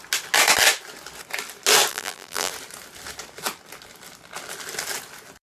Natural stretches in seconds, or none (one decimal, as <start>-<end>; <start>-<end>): 0.0-1.9; 2.5-5.6